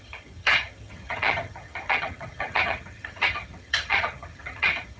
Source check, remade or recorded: remade